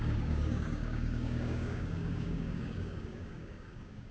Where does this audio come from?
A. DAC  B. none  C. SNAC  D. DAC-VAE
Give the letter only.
A